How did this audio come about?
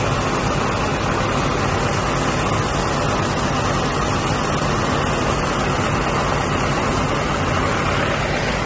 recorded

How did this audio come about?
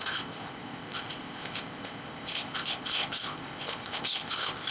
remade